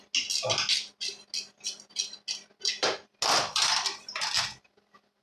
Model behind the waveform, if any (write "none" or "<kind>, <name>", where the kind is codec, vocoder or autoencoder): none